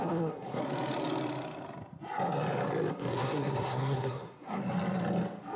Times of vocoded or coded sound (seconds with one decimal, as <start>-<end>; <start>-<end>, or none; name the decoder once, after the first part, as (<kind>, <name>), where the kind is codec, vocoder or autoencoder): 0.0-0.6 (codec, SNAC); 2.9-4.6

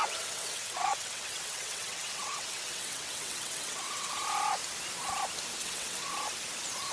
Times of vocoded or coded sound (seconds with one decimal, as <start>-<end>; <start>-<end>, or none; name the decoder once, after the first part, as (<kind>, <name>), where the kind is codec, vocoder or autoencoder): 0.0-4.1 (vocoder, WaveNeXt); 5.6-6.1

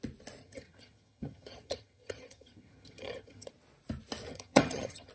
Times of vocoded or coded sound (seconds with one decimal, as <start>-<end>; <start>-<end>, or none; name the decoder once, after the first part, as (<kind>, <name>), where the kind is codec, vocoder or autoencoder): 0.4-3.5 (vocoder, HiFi-GAN); 4.3-5.1

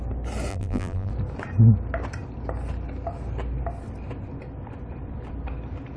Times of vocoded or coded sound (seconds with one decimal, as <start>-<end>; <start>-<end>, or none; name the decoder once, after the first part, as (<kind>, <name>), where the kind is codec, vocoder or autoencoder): 0.5-1.1 (vocoder, BigVGAN v2)

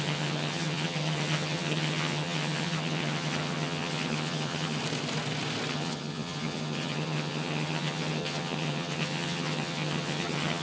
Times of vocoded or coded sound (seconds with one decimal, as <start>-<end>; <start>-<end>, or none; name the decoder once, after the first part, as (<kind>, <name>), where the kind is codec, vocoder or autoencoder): 0.0-4.8 (vocoder, HiFi-GAN); 5.7-10.6

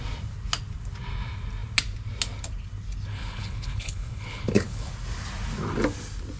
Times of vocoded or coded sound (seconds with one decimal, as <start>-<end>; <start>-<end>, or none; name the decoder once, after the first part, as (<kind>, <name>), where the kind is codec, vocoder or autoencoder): 3.1-4.9 (codec, HILCodec)